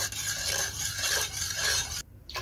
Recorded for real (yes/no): yes